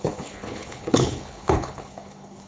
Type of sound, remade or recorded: remade